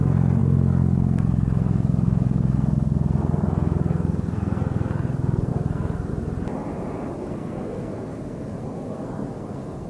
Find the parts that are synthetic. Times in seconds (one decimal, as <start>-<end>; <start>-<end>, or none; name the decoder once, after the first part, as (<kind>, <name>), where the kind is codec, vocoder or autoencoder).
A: 0.0-6.1 (codec, SNAC); 7.2-9.9